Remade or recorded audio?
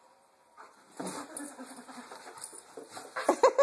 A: recorded